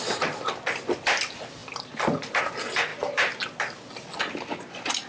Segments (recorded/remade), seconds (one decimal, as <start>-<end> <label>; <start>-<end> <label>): 0.0-5.1 recorded